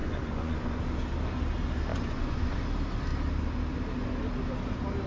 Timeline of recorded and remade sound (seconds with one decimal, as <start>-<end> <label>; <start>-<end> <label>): 0.0-0.8 remade; 0.8-1.9 recorded; 1.9-2.6 remade; 2.6-5.1 recorded